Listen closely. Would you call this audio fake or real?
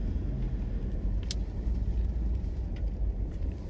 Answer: real